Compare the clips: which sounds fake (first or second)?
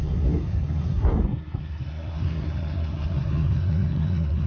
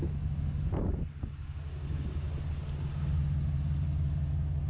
first